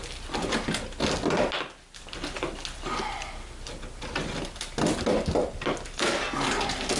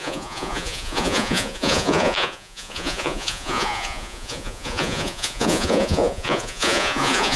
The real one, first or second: first